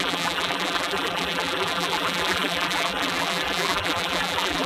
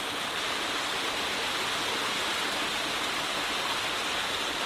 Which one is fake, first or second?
first